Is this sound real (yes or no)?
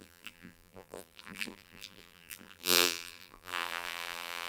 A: no